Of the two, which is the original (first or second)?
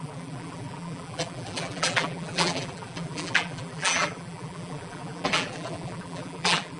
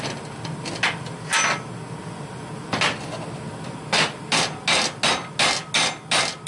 second